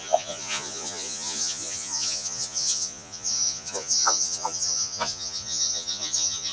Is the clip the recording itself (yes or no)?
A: no